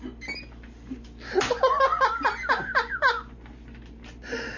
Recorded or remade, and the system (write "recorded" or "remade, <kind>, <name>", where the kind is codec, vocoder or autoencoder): recorded